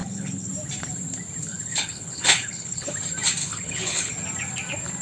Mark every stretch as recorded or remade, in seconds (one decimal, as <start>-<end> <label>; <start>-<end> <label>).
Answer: 0.0-0.5 remade; 0.5-1.4 recorded; 1.4-2.9 remade; 2.9-3.4 recorded; 3.4-4.1 remade; 4.1-5.0 recorded